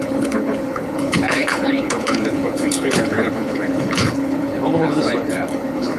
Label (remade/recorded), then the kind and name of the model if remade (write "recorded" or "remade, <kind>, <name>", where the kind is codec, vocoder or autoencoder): remade, codec, HILCodec